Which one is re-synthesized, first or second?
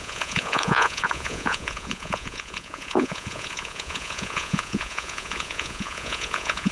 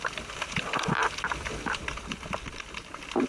first